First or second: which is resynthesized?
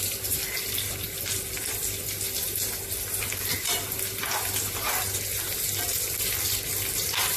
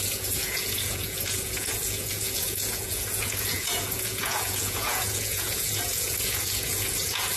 second